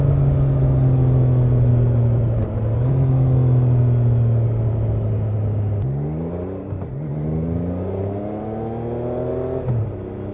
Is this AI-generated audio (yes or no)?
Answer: no